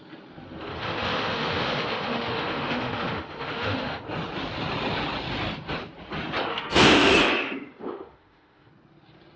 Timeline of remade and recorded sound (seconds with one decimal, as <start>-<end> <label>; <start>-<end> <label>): 0.0-0.7 recorded; 0.7-4.0 remade; 4.0-6.5 recorded; 6.5-7.1 remade; 7.1-7.8 recorded; 7.8-8.7 remade; 8.7-9.4 recorded